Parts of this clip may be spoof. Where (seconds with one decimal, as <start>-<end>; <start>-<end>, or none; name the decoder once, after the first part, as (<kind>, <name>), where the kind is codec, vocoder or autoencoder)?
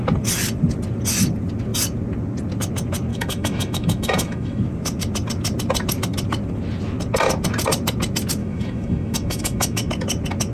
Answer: 3.1-4.6 (autoencoder, DAC-VAE); 8.4-9.9